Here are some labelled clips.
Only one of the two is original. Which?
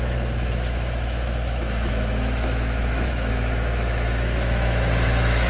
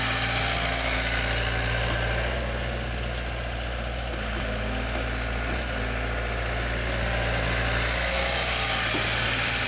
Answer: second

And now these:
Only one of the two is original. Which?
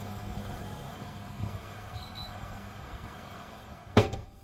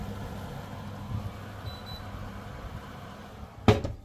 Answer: second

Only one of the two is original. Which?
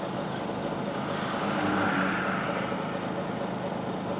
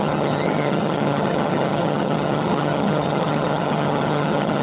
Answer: first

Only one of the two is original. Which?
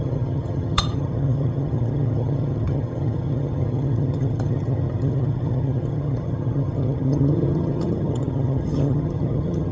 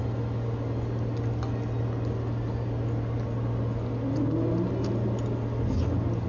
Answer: second